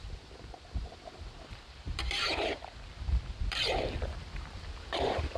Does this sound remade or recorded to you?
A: remade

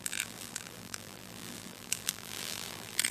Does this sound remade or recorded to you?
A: remade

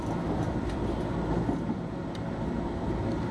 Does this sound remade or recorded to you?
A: remade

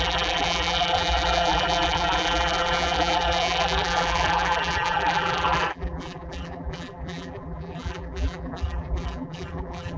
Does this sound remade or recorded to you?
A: remade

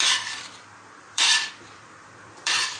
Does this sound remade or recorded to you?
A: remade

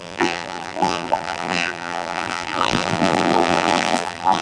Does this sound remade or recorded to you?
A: remade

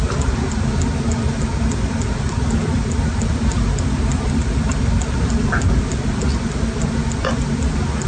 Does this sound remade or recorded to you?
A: recorded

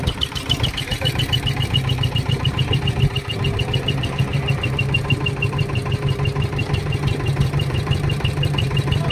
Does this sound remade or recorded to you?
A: remade